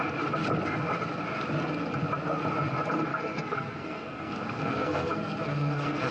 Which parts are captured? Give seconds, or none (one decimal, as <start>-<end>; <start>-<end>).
0.0-3.1